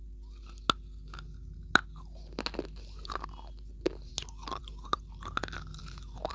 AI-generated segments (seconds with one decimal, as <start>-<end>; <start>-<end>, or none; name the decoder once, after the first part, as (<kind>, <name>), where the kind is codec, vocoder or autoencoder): none